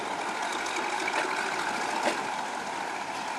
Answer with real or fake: real